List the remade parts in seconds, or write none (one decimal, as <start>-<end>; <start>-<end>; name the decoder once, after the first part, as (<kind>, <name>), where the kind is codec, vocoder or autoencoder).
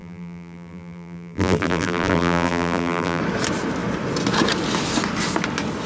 0.0-3.2 (vocoder, BigVGAN v2)